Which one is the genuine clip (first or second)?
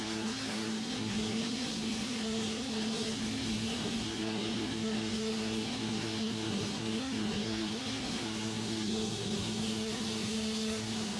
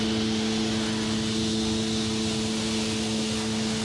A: second